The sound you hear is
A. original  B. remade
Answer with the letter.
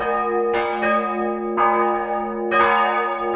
A